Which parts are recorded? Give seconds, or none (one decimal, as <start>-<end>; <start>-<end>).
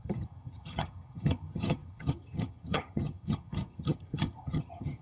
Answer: none